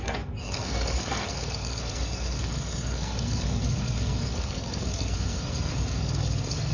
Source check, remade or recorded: remade